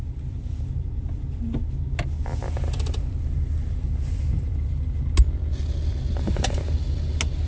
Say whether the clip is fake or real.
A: real